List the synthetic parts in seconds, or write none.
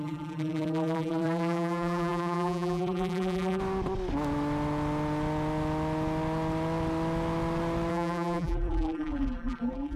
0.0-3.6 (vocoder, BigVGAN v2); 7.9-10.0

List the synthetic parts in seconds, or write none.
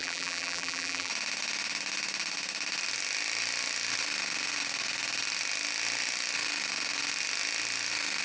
0.0-1.1 (vocoder, BigVGAN v2)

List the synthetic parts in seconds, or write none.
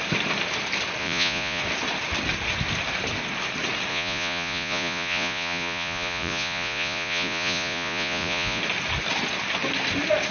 1.0-1.6 (vocoder, Vocos); 3.9-8.6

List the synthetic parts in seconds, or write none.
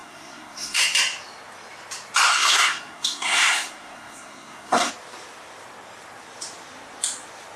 0.0-0.8 (codec, SNAC); 2.3-4.9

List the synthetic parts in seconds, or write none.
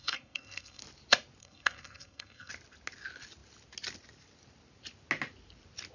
0.0-0.8 (codec, SNAC); 1.4-2.5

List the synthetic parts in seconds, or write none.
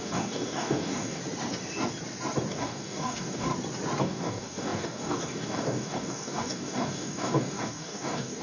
0.0-1.2 (codec, DAC); 2.5-3.5; 4.0-8.4